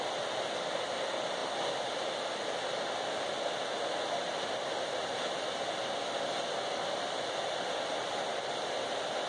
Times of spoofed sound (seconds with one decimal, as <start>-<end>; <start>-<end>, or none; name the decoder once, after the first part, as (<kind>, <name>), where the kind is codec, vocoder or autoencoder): 0.0-1.4 (vocoder, BigVGAN v2); 6.7-9.3

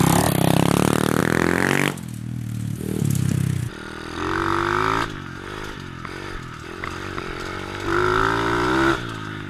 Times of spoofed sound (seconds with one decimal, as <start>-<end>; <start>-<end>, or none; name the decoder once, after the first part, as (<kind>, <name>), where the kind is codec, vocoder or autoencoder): none